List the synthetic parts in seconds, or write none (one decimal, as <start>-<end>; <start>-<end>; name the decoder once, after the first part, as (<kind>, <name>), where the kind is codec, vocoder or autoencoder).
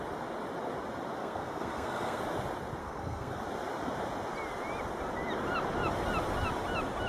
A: 1.2-2.2 (codec, SNAC); 2.8-3.4